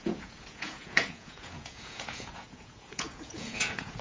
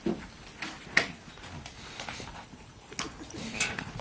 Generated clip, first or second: first